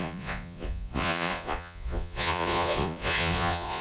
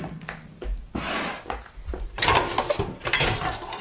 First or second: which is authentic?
second